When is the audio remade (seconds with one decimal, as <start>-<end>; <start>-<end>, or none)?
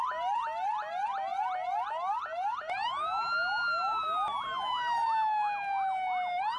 none